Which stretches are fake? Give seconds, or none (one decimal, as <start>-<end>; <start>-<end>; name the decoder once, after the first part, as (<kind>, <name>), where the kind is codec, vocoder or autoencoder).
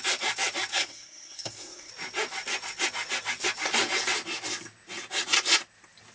0.7-1.9 (codec, SNAC)